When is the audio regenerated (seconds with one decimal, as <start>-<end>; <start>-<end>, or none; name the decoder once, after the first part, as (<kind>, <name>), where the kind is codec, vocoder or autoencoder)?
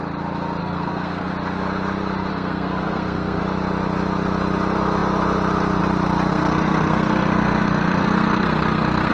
0.6-1.3 (codec, SNAC); 2.3-3.4; 6.3-9.1